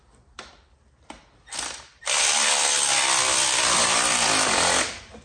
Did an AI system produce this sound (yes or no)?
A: yes